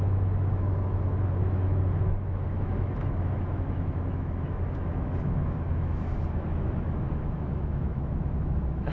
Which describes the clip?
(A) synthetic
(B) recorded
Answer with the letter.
A